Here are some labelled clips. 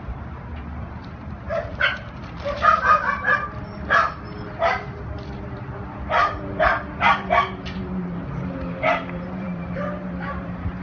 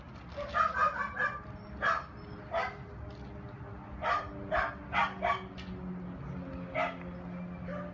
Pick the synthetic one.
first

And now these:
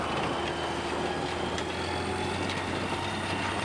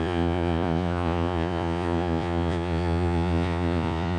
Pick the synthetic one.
second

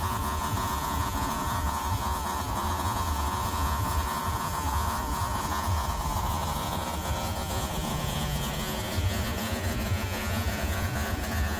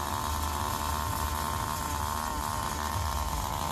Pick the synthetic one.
first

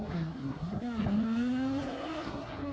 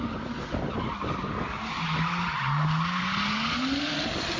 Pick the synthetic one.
first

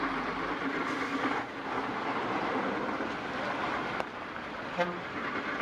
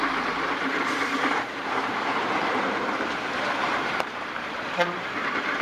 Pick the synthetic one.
second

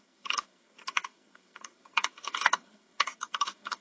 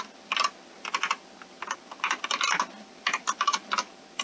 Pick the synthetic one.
first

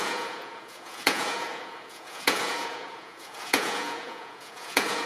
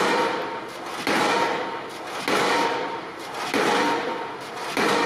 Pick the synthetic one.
first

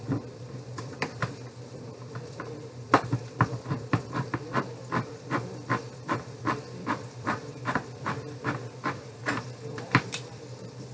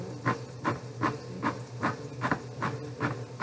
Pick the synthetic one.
first